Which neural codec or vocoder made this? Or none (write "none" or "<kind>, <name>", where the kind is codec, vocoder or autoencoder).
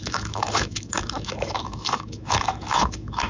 autoencoder, DAC-VAE